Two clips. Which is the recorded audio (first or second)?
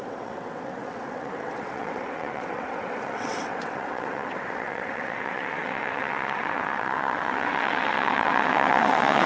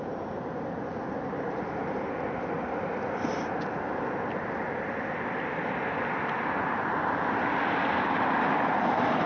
second